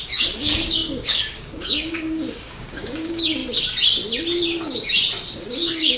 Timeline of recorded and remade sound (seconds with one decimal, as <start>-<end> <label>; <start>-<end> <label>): 0.0-3.4 remade; 3.4-5.5 recorded; 5.5-6.0 remade